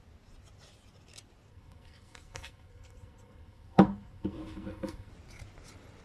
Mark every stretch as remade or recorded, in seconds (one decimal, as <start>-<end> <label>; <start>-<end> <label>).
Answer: 0.0-1.5 recorded; 1.5-5.1 remade; 5.1-6.0 recorded